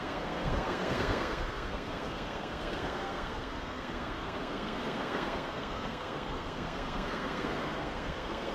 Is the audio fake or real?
fake